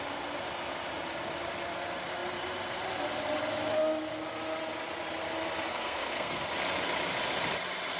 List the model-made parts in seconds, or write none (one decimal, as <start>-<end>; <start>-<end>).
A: 5.7-6.4